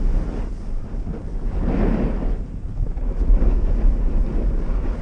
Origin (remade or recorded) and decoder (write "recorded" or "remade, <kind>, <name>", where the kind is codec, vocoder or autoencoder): recorded